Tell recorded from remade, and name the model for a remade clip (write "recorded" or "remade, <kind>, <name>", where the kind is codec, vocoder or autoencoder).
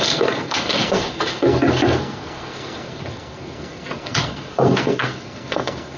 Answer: remade, codec, SNAC